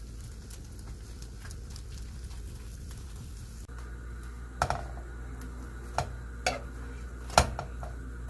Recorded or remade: recorded